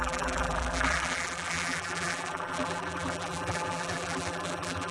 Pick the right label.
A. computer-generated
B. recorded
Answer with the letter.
A